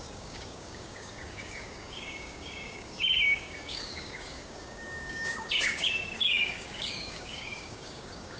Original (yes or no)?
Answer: no